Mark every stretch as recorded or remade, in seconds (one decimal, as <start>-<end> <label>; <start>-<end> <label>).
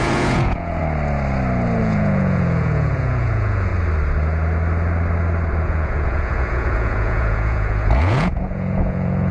0.0-0.8 remade; 0.8-1.8 recorded; 1.8-3.7 remade; 3.7-5.6 recorded; 5.6-9.3 remade